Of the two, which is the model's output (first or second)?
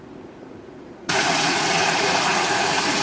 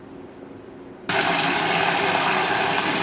first